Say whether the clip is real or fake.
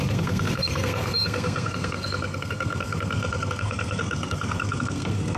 fake